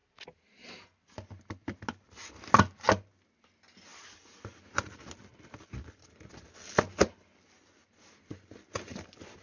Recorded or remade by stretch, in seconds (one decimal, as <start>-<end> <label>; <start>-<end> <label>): 0.0-9.4 recorded